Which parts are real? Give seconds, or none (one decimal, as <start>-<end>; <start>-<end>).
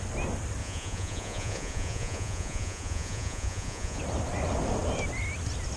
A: 0.0-0.6; 4.0-5.8